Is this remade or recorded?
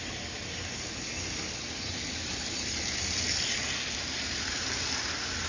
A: recorded